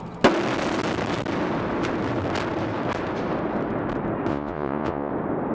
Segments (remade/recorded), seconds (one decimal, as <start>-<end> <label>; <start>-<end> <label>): 0.0-4.3 recorded; 4.3-5.1 remade; 5.1-5.5 recorded